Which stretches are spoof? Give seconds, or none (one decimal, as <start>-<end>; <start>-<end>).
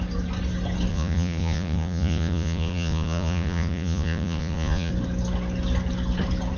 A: 0.9-4.9